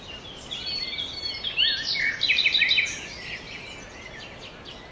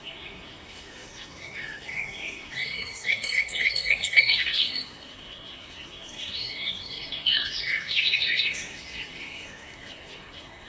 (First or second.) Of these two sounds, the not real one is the second